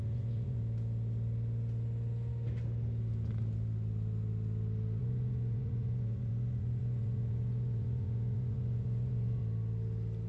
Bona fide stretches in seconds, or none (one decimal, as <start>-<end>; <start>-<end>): 0.6-5.0; 9.4-10.3